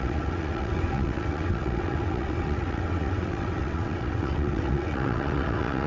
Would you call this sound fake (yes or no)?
yes